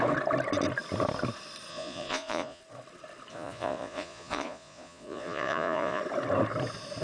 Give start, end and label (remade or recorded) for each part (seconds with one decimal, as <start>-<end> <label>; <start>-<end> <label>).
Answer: 0.0-1.7 recorded; 1.7-2.6 remade; 2.6-3.3 recorded; 3.3-6.0 remade; 6.0-7.0 recorded

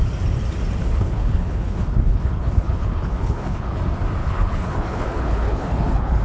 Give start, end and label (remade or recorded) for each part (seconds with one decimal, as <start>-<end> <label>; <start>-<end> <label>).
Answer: 0.0-0.8 recorded; 0.8-3.8 remade; 3.8-4.2 recorded; 4.2-6.2 remade

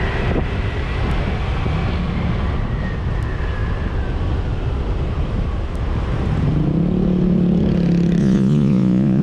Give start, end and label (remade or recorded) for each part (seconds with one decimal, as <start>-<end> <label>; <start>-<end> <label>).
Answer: 0.0-8.2 recorded; 8.2-9.2 remade

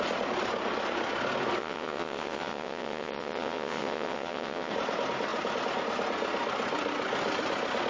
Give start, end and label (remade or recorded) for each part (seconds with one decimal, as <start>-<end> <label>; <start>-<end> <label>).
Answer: 0.0-1.6 recorded; 1.6-4.7 remade; 4.7-7.9 recorded

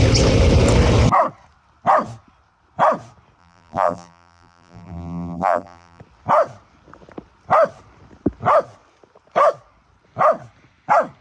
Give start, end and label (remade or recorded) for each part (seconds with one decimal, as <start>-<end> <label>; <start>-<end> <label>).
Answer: 0.0-3.4 recorded; 3.4-6.0 remade; 6.0-11.2 recorded

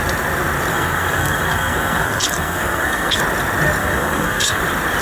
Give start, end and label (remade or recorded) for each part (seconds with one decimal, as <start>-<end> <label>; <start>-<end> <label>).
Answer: 0.0-0.7 recorded; 0.7-3.2 remade; 3.2-3.8 recorded; 3.8-4.6 remade; 4.6-5.0 recorded